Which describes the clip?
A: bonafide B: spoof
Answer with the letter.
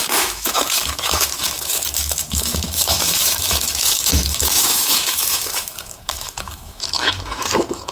B